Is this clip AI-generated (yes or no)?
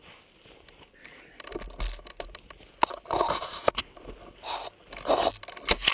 no